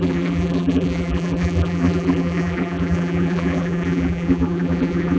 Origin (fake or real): fake